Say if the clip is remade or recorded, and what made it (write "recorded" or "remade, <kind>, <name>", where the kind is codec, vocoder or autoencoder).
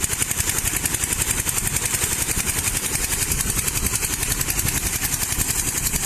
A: recorded